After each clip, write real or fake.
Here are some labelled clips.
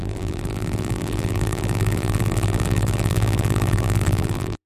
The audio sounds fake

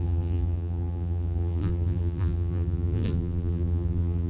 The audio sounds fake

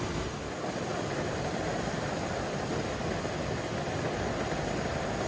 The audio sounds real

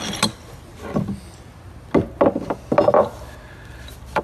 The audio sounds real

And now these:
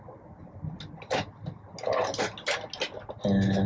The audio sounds real